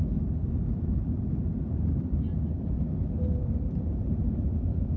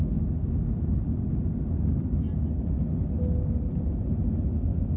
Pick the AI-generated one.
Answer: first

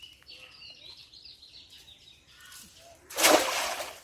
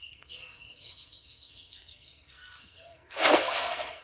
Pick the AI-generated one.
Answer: second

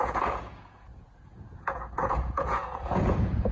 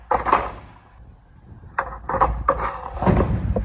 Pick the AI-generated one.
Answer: first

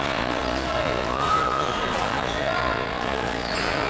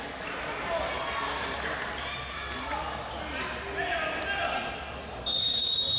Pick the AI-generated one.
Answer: first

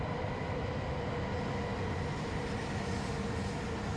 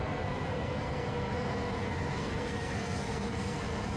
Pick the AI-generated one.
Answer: second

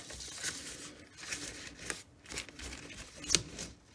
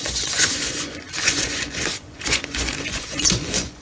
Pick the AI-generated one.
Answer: second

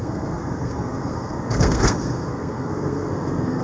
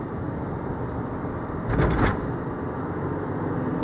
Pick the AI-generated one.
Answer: first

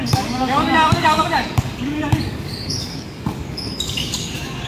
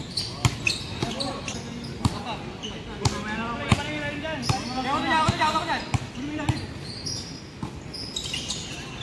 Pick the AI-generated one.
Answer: first